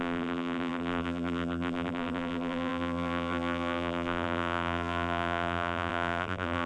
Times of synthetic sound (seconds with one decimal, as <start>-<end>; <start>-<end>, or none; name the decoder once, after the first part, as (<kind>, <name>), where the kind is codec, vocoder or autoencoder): 0.0-6.7 (vocoder, BigVGAN v2)